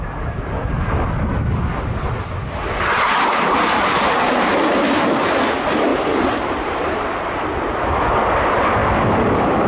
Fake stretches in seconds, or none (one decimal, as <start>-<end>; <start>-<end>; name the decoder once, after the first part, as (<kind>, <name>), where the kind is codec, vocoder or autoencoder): 5.9-7.5 (vocoder, BigVGAN v2)